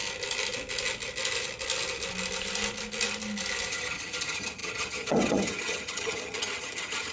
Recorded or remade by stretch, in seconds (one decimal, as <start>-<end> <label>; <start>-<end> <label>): 0.0-3.7 recorded; 3.7-7.1 remade